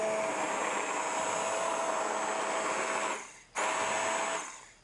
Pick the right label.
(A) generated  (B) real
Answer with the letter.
B